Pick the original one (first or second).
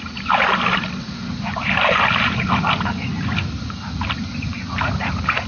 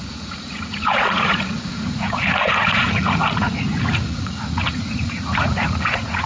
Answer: first